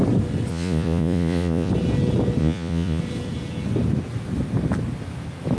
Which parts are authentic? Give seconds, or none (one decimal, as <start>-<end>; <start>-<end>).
0.0-0.5; 1.7-2.4; 3.0-5.6